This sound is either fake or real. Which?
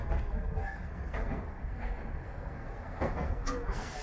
fake